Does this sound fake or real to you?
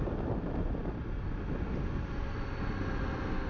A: real